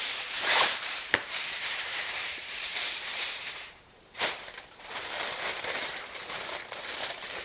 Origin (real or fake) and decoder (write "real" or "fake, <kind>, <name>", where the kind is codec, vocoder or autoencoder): fake, vocoder, BigVGAN v2